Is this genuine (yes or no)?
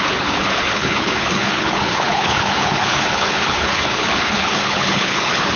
no